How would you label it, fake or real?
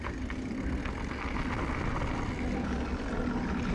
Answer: real